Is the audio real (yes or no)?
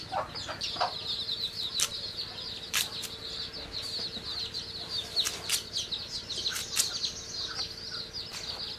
yes